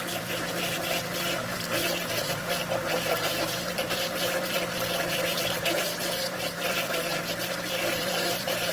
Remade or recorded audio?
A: remade